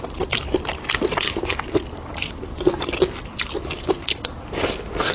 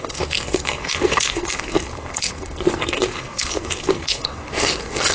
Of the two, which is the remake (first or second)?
second